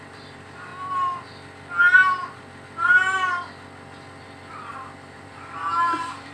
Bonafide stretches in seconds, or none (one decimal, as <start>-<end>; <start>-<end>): 0.7-4.5